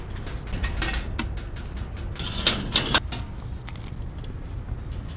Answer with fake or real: real